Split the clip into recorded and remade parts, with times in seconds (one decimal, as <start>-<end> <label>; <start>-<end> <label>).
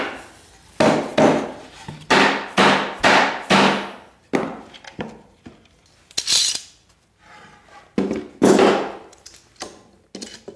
0.0-10.6 recorded